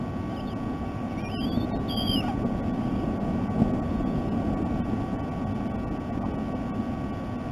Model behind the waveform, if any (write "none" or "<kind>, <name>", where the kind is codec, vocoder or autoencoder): none